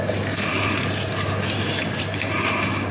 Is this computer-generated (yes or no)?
no